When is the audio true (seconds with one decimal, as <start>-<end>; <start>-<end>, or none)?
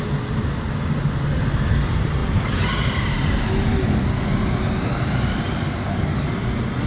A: 0.0-6.9